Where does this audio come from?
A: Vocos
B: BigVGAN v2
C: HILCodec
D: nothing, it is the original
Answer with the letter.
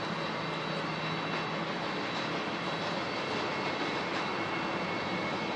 D